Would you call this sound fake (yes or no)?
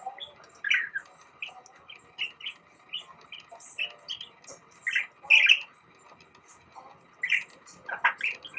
no